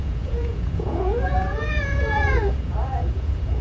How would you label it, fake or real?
fake